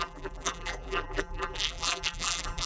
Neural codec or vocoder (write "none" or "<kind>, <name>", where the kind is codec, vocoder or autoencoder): vocoder, BigVGAN v2